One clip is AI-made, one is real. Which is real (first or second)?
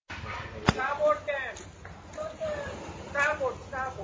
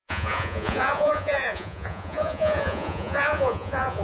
first